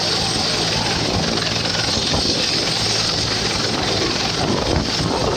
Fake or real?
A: real